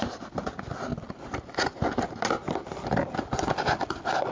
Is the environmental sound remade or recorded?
recorded